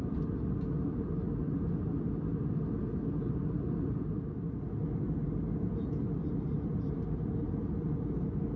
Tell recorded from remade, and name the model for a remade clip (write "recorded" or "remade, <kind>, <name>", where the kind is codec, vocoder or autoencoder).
recorded